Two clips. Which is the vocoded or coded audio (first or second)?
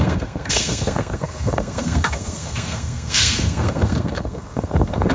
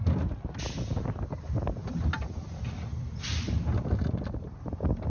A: first